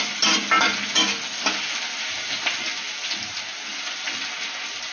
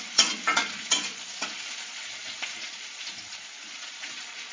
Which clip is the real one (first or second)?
first